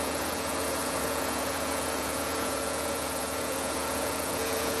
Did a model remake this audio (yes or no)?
yes